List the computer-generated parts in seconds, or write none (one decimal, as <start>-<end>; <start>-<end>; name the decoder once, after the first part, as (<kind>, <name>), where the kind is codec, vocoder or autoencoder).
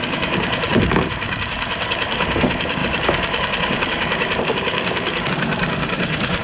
0.0-6.4 (codec, DAC)